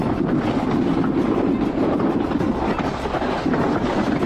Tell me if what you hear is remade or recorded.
recorded